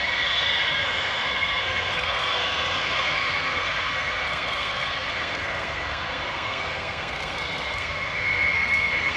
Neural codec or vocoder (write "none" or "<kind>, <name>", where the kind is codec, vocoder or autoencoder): codec, SNAC